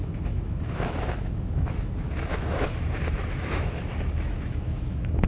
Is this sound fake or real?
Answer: fake